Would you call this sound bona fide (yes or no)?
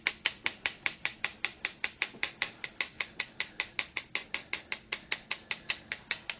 yes